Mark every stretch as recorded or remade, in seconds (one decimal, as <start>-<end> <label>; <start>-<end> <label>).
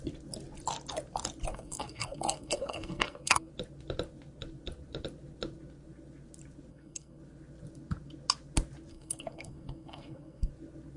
0.0-1.5 recorded; 1.5-3.5 remade; 3.5-6.7 recorded; 6.7-7.2 remade; 7.2-8.9 recorded; 8.9-10.5 remade; 10.5-11.0 recorded